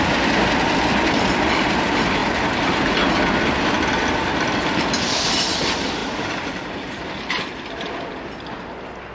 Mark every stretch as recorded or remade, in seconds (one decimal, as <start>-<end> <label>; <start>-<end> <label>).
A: 0.0-9.1 recorded